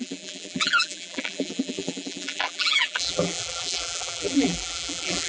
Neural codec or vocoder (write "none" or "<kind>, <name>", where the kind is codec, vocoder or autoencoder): vocoder, BigVGAN v2